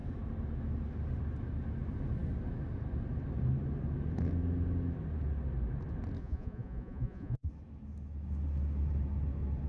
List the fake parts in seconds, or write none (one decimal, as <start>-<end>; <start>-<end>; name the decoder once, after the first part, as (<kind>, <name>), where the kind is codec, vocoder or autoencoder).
6.2-7.5 (vocoder, Vocos)

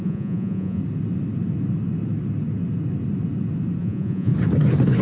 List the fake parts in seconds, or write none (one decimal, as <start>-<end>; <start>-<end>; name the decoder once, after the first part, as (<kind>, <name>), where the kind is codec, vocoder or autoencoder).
0.0-0.8 (vocoder, Vocos); 3.8-4.3

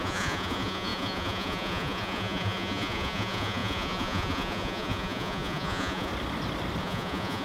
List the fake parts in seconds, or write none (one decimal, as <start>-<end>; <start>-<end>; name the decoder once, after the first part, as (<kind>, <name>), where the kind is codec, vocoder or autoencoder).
0.0-6.1 (vocoder, Vocos); 6.8-7.4

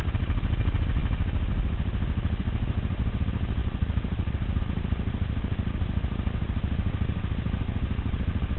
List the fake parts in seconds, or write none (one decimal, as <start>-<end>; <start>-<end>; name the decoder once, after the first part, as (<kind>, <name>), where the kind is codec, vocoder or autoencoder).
none